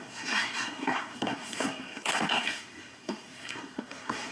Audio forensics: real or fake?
fake